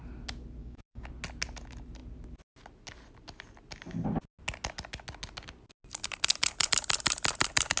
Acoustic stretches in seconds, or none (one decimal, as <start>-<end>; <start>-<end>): 0.0-0.6; 1.1-7.8